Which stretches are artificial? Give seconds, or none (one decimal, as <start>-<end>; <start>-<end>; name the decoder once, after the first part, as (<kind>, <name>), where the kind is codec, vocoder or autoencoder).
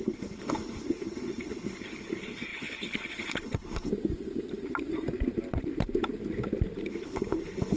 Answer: 0.0-3.9 (codec, HILCodec); 6.9-7.8